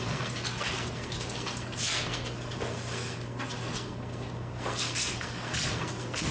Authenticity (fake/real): fake